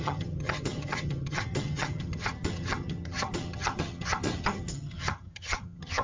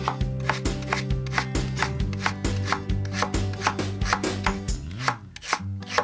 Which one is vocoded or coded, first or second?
first